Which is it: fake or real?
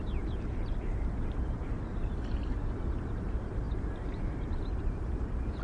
fake